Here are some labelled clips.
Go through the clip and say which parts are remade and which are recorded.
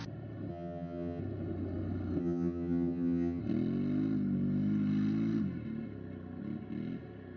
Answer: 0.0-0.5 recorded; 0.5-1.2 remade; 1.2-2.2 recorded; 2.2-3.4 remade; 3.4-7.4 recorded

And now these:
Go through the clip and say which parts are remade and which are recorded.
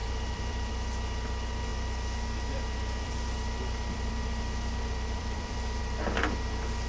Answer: 0.0-0.7 remade; 0.7-1.7 recorded; 1.7-5.8 remade; 5.8-6.9 recorded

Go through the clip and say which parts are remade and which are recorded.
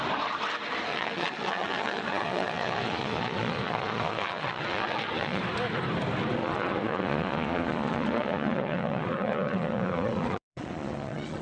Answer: 0.0-0.9 recorded; 0.9-5.4 remade; 5.4-6.4 recorded; 6.4-11.4 remade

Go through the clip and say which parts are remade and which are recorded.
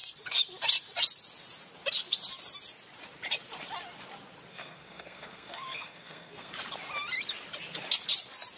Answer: 0.0-4.5 recorded; 4.5-6.5 remade; 6.5-8.6 recorded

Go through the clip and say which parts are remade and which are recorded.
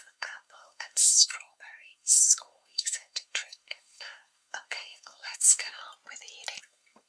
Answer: 0.0-5.8 remade; 5.8-6.6 recorded; 6.6-7.1 remade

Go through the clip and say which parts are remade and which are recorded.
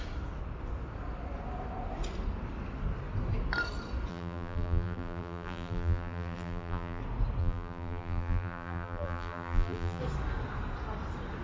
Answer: 0.0-4.1 recorded; 4.1-7.0 remade; 7.0-7.4 recorded; 7.4-10.0 remade; 10.0-11.4 recorded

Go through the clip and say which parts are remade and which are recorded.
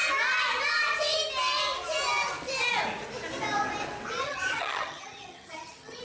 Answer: 0.0-4.2 recorded; 4.2-6.0 remade